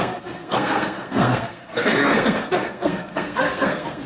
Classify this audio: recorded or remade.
remade